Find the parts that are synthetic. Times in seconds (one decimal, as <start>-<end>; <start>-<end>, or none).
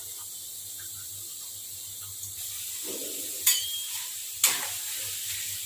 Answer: 3.0-4.4